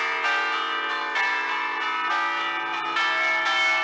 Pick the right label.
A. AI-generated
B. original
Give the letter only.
B